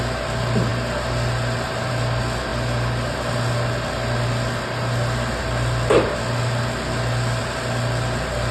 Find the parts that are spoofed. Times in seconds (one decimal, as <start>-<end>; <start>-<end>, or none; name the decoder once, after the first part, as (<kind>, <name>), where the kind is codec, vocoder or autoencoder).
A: none

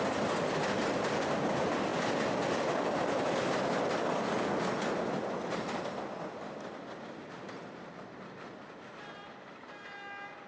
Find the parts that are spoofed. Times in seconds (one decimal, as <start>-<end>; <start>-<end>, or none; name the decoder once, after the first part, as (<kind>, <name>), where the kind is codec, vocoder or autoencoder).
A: none

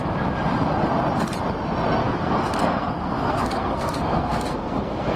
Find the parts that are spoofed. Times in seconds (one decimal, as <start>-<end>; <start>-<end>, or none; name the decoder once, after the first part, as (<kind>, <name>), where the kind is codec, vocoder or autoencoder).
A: 2.0-5.2 (codec, SNAC)